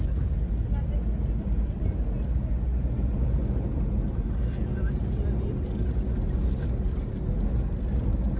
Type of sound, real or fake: real